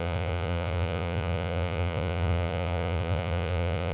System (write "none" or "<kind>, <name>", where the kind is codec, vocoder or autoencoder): vocoder, Vocos